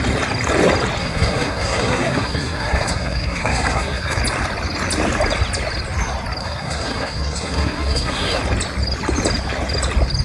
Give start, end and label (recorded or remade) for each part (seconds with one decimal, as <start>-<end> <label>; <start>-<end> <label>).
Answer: 0.0-1.0 recorded; 1.0-4.2 remade; 4.2-6.4 recorded; 6.4-8.4 remade; 8.4-10.2 recorded